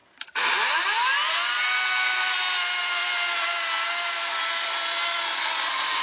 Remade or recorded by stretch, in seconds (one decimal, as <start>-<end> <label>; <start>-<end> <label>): 0.0-6.0 recorded